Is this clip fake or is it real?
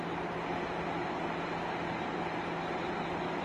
real